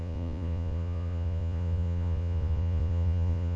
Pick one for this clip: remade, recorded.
remade